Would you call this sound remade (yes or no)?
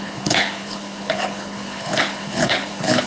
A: yes